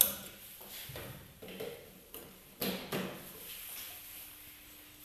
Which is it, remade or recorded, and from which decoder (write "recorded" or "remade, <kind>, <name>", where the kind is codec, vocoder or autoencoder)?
recorded